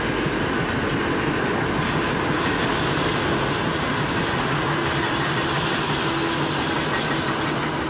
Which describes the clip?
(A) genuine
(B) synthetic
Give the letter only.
A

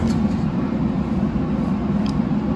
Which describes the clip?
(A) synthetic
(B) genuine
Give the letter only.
A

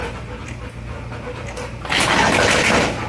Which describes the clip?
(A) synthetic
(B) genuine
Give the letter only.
B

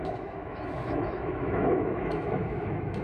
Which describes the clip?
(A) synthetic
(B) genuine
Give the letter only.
A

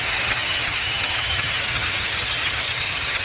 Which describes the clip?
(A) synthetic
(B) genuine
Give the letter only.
A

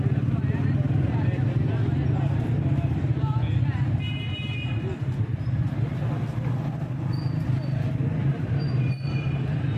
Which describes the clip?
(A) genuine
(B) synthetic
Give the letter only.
A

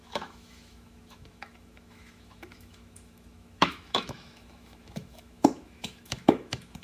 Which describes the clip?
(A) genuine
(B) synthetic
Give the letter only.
B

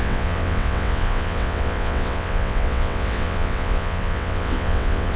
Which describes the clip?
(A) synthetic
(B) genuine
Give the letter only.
A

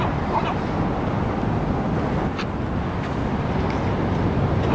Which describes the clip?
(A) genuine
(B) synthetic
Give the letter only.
A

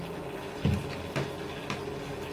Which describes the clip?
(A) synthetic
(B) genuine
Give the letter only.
B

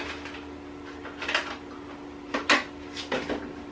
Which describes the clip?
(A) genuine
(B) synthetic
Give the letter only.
A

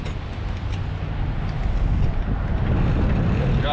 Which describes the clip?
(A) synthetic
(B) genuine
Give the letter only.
B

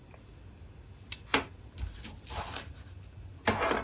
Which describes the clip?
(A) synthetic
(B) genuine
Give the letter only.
B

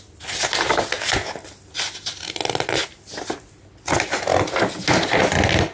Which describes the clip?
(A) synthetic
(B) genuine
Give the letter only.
B